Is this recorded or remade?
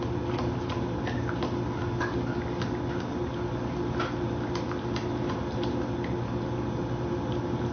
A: recorded